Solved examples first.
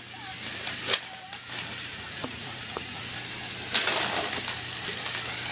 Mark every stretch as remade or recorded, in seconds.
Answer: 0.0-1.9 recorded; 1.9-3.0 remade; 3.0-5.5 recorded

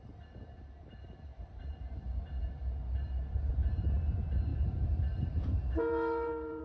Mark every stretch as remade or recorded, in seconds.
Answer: 0.0-1.3 recorded; 1.3-2.0 remade; 2.0-2.4 recorded; 2.4-3.5 remade; 3.5-4.5 recorded; 4.5-6.6 remade

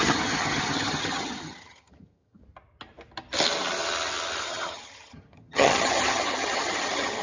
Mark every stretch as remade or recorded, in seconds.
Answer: 0.0-2.4 remade; 2.4-4.4 recorded; 4.4-7.2 remade

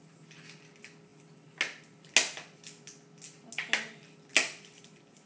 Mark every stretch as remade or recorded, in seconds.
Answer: 0.0-5.3 recorded